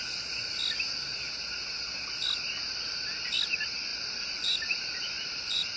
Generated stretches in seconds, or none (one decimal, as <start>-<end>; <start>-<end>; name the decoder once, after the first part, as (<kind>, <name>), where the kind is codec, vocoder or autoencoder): 3.9-5.8 (vocoder, BigVGAN v2)